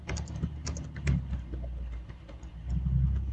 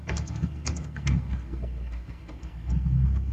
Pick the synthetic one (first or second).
second